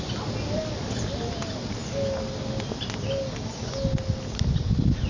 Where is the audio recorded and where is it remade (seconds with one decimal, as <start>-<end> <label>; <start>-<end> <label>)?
0.0-5.1 recorded